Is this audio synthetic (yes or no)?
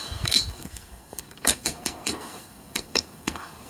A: yes